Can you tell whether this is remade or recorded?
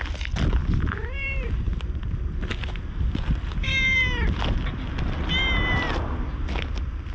recorded